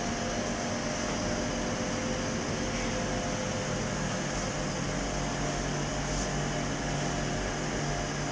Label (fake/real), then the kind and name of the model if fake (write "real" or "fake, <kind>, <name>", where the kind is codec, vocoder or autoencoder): real